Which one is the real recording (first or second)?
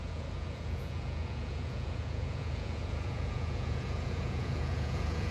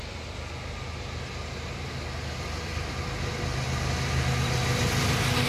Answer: second